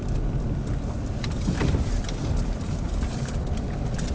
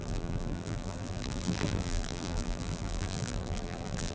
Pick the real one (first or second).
first